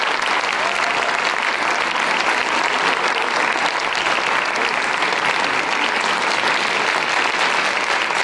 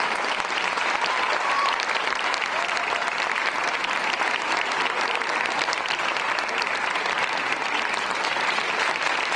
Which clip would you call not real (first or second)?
second